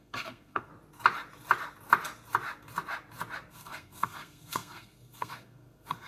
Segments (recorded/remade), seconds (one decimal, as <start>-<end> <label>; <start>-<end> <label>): 0.0-0.7 remade; 0.7-3.5 recorded; 3.5-6.1 remade